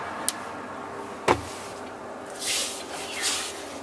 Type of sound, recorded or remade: recorded